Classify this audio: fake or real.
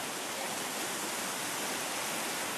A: real